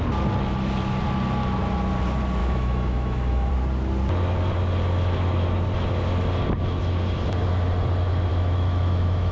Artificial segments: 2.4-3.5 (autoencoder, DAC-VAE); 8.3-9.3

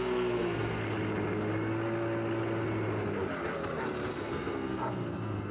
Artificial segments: 0.0-0.8 (codec, SNAC); 4.1-5.5

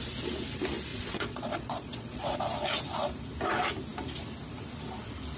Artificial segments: 0.9-2.4 (vocoder, Vocos)

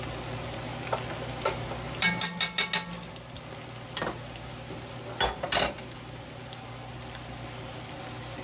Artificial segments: none

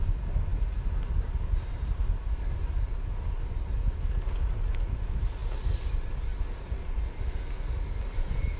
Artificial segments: none

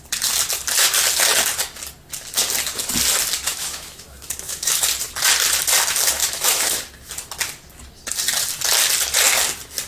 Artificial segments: 3.5-4.8 (autoencoder, DAC-VAE); 6.2-6.8